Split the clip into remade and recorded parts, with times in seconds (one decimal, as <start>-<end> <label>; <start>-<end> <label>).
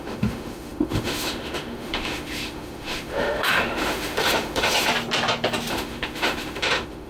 0.0-4.9 remade; 4.9-5.7 recorded; 5.7-7.1 remade